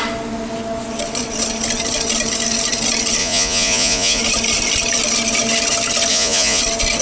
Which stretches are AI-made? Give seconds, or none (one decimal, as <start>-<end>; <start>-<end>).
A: 3.2-4.2; 6.1-6.6